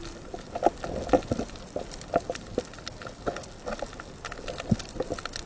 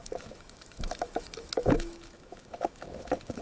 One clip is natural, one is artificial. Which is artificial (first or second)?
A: second